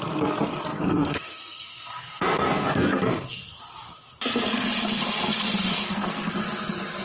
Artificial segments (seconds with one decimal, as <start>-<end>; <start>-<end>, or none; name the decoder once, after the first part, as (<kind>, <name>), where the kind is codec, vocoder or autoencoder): 0.7-3.6 (codec, SNAC); 5.7-6.3